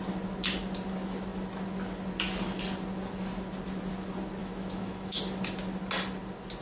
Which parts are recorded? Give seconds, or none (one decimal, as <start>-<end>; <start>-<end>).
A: 0.0-4.4; 5.2-6.6